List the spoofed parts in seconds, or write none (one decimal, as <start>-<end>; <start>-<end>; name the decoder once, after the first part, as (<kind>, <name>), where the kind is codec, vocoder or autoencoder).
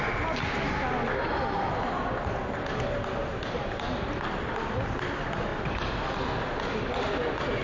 none